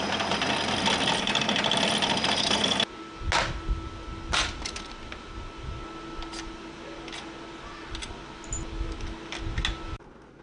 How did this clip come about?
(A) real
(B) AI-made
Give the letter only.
A